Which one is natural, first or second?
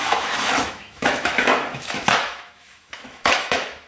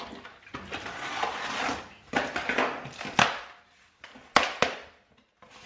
second